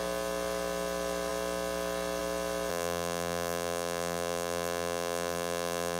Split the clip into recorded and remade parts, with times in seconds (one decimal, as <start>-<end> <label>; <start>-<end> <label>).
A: 0.0-2.7 recorded; 2.7-6.0 remade